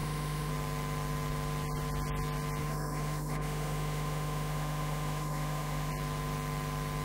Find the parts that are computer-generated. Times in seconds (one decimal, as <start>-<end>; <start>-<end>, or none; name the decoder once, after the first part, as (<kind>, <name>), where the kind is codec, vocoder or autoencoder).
0.0-0.5 (autoencoder, DAC-VAE); 2.6-5.9